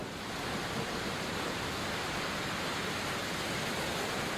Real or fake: real